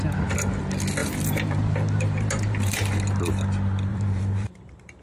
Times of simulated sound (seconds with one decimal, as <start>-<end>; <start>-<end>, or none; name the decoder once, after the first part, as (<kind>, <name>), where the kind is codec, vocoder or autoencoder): 1.0-3.0 (vocoder, BigVGAN v2); 3.9-5.0